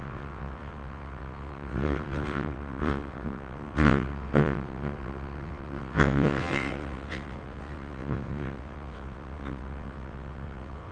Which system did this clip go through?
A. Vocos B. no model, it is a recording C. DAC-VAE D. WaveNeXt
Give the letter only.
D